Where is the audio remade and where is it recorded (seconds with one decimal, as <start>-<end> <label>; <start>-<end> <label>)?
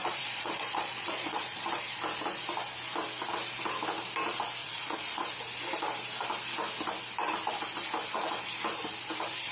0.0-2.0 remade; 2.0-4.6 recorded; 4.6-5.2 remade; 5.2-9.5 recorded